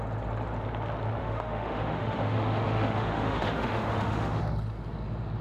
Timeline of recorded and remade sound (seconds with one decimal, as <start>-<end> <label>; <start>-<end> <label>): 0.0-1.2 recorded; 1.2-4.4 remade; 4.4-5.4 recorded